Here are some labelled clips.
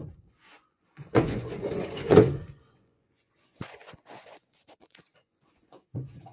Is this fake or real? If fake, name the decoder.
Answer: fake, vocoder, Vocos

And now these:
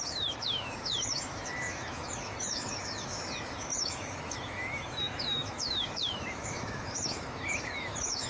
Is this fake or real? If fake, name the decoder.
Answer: fake, autoencoder, DAC-VAE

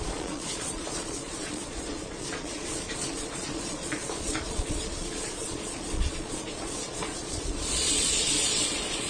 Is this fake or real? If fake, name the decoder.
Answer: fake, vocoder, Vocos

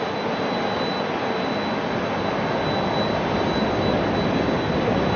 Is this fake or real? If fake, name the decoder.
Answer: real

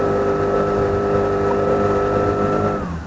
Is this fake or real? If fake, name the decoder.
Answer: real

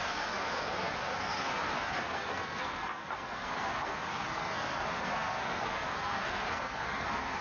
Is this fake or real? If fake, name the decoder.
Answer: fake, codec, SNAC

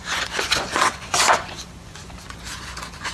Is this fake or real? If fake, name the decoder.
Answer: fake, vocoder, Vocos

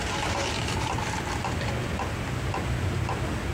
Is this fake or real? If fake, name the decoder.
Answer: real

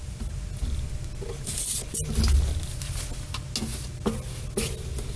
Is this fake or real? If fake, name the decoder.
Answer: real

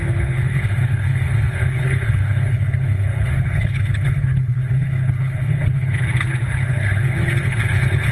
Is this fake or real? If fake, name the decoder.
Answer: fake, codec, HILCodec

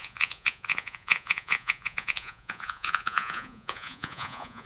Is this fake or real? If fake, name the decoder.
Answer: fake, vocoder, Vocos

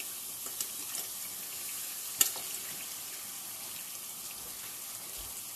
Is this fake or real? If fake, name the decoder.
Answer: real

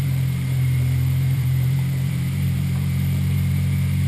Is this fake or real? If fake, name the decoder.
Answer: fake, vocoder, BigVGAN v2